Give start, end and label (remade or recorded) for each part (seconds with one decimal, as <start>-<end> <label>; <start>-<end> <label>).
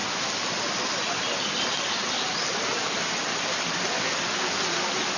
0.0-5.2 recorded